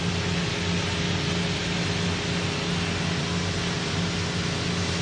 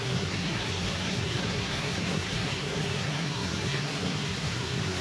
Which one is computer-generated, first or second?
second